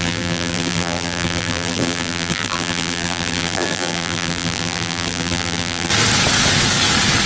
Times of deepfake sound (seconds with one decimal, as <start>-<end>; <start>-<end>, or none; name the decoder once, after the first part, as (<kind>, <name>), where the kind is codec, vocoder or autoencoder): 0.0-5.9 (vocoder, BigVGAN v2)